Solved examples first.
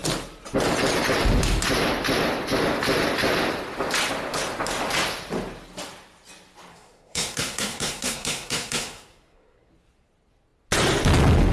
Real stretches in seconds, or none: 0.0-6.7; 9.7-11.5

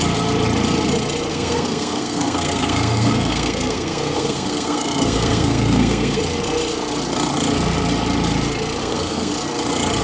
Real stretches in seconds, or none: 0.0-1.3; 6.2-8.8; 9.3-10.0